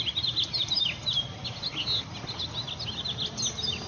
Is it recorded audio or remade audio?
recorded